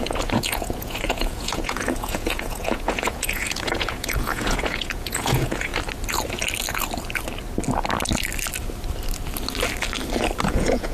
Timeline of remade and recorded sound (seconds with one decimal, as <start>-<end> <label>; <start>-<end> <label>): 0.0-5.7 remade; 5.7-10.4 recorded; 10.4-10.9 remade